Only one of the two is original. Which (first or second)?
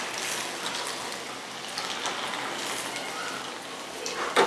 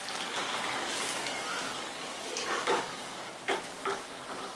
first